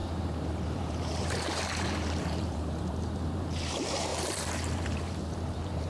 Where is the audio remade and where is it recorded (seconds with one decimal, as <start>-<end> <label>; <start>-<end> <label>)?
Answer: 0.0-5.9 remade